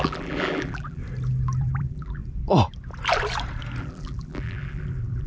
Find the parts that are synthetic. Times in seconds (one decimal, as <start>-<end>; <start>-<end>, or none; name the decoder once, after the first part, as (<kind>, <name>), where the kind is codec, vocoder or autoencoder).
0.0-1.0 (vocoder, BigVGAN v2); 1.6-2.2; 3.8-5.3